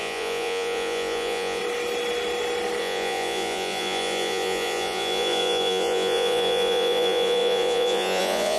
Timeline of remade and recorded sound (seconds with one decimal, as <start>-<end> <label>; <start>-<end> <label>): 0.0-1.6 remade; 1.6-2.8 recorded; 2.8-8.6 remade